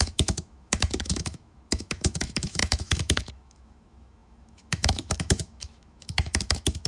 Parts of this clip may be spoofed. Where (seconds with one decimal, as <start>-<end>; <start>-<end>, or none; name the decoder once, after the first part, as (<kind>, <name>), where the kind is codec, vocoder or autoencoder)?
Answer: 0.0-6.9 (autoencoder, DAC-VAE)